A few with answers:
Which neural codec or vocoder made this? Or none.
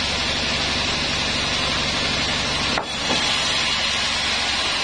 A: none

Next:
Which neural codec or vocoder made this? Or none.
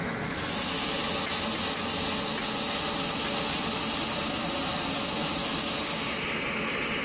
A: none